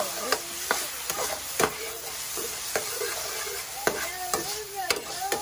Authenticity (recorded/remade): remade